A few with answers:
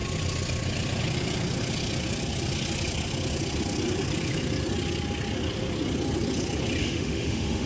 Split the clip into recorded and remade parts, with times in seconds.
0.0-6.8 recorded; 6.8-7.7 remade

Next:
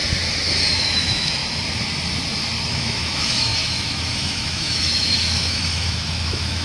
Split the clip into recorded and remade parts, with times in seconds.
0.0-0.8 recorded; 0.8-1.4 remade; 1.4-2.7 recorded; 2.7-6.6 remade

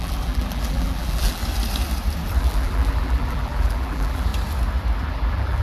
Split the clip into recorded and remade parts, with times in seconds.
0.0-1.4 remade; 1.4-2.4 recorded; 2.4-4.3 remade; 4.3-5.1 recorded; 5.1-5.6 remade

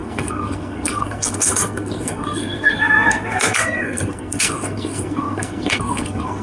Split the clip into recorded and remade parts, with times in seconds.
0.0-6.4 remade